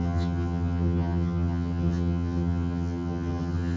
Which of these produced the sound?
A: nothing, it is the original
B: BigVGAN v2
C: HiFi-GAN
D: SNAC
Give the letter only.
C